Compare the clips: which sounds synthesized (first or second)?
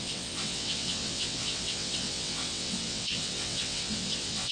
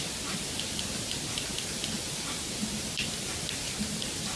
first